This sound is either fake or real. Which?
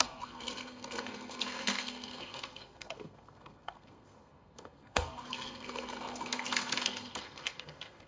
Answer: fake